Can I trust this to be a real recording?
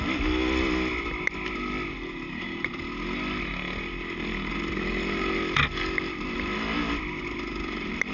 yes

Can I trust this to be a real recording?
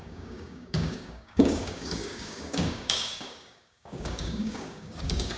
no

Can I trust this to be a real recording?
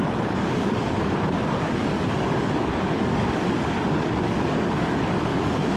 no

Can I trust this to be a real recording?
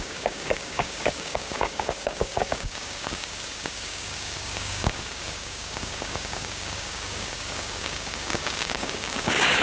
no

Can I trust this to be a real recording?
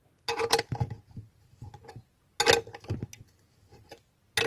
yes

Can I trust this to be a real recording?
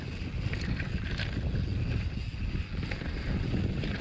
yes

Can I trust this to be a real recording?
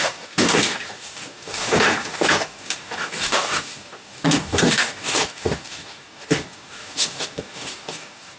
no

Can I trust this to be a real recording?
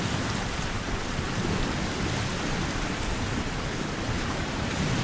yes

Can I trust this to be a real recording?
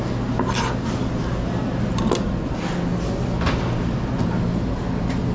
yes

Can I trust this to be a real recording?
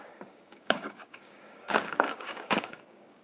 no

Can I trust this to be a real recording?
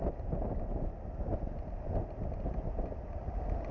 yes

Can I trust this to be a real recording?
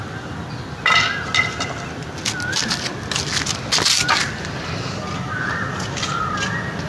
yes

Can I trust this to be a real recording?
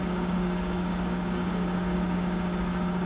no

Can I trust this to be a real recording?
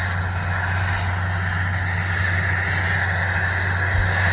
yes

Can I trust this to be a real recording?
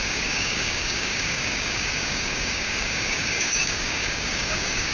no